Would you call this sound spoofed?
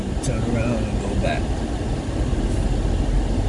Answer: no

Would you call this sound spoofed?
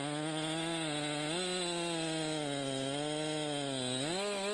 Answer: no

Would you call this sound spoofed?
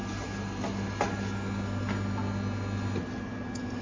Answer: no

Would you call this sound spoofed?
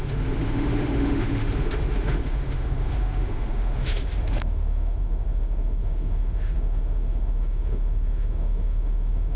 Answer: yes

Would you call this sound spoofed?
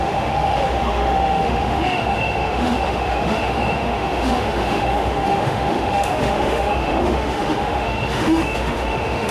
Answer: yes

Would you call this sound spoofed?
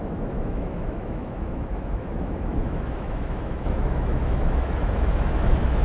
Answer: yes